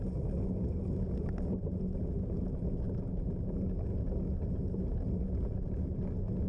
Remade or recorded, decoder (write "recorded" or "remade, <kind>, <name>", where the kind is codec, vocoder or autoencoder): recorded